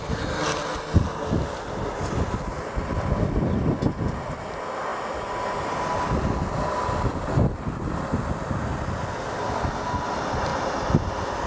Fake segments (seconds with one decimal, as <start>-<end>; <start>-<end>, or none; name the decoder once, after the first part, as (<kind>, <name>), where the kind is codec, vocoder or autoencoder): none